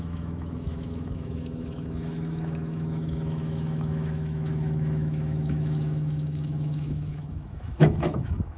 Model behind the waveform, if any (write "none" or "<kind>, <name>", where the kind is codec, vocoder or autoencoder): autoencoder, DAC-VAE